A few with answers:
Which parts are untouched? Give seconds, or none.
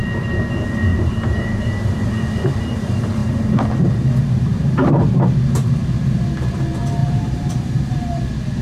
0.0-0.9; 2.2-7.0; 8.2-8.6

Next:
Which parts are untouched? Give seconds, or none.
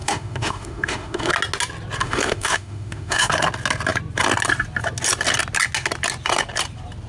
1.3-2.0; 3.3-7.1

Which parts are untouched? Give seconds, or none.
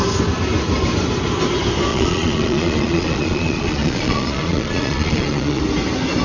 0.0-1.9; 5.6-6.2